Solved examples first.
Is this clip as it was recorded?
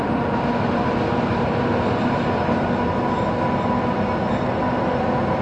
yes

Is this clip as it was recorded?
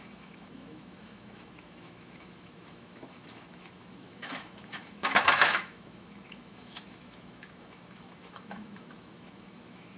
no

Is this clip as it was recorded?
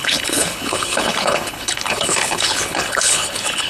no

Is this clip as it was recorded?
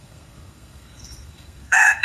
no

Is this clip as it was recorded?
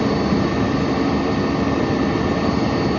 yes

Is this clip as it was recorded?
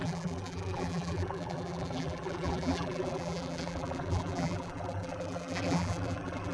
no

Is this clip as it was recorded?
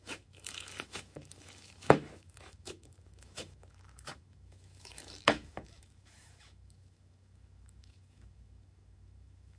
no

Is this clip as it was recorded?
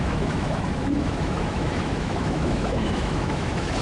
no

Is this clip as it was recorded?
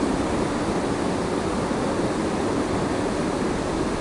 yes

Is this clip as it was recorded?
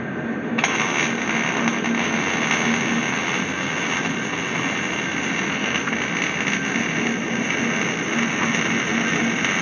yes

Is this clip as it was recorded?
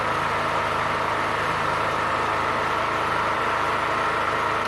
yes